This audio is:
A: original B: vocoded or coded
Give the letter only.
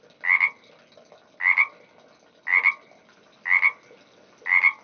A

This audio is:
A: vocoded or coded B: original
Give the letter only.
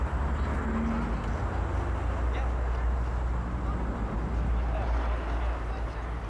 B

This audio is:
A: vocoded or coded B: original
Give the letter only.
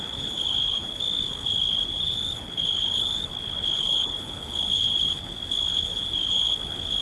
A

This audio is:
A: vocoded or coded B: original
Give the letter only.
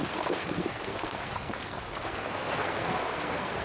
A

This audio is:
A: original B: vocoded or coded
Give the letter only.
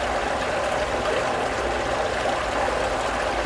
A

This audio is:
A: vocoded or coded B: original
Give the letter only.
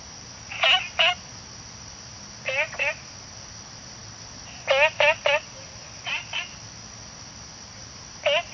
B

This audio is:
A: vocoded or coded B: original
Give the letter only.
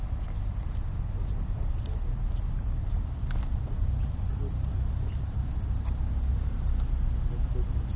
B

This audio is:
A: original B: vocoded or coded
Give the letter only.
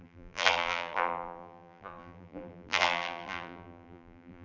B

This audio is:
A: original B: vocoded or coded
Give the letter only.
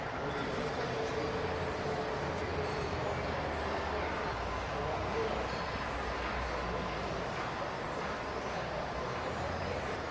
A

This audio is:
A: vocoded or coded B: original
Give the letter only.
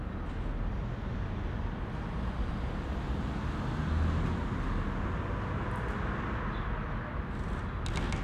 B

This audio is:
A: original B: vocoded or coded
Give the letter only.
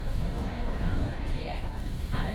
B